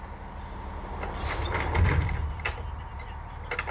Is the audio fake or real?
real